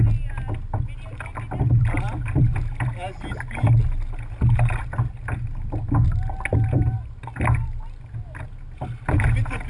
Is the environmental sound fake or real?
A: real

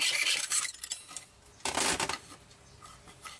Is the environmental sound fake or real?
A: real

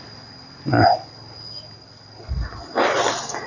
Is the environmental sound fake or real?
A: real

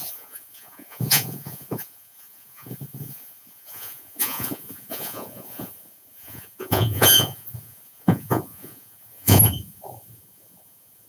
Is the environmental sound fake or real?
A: fake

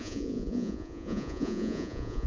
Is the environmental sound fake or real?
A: fake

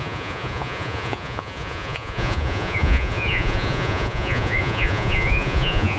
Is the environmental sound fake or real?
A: fake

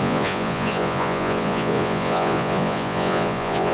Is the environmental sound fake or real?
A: fake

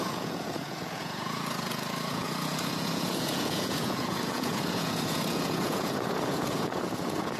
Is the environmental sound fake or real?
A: fake